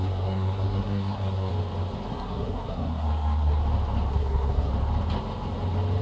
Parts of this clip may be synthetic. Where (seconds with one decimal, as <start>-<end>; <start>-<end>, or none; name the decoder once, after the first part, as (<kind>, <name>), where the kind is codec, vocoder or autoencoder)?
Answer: 0.0-1.5 (codec, SNAC); 2.1-3.6; 4.1-4.7

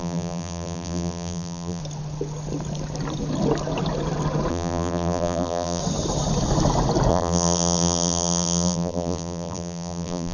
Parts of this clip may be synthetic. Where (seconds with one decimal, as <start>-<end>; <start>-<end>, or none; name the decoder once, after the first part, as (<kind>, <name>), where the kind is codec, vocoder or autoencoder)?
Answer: 0.0-1.8 (vocoder, BigVGAN v2); 4.5-5.8; 7.1-10.3

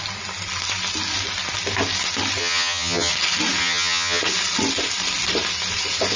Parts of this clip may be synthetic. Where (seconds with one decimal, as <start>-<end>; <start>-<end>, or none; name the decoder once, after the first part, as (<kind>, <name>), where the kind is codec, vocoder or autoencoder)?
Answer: 2.4-3.1 (vocoder, HiFi-GAN); 3.6-4.2

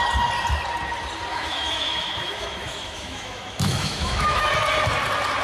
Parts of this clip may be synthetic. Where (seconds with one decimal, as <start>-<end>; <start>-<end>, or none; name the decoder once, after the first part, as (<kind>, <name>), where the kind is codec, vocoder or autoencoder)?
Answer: 1.3-4.5 (autoencoder, DAC-VAE)

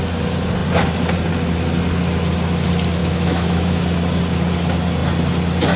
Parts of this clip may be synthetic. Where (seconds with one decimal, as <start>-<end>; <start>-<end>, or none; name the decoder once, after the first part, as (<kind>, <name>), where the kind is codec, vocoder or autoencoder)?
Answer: 3.0-3.8 (autoencoder, DAC-VAE)

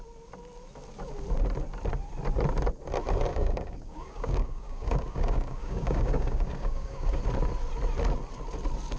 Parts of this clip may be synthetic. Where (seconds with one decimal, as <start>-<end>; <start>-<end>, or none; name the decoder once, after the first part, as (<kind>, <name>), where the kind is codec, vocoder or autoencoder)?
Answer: 3.3-7.2 (codec, DAC)